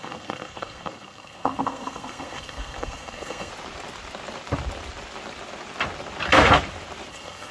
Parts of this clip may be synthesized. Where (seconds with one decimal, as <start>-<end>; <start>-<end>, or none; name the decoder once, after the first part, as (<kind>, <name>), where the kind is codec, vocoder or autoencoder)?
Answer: 0.0-3.5 (codec, SNAC); 7.1-7.5